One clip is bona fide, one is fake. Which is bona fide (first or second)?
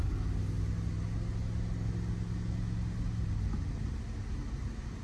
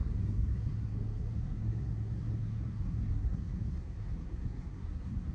first